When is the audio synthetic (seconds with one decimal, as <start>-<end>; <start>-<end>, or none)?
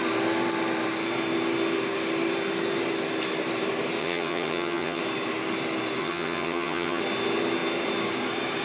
4.0-5.0; 6.0-7.0